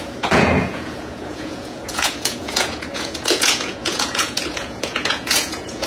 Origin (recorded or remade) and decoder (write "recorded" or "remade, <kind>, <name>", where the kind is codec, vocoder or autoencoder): remade, vocoder, Vocos